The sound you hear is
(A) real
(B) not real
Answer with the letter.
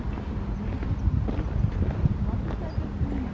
A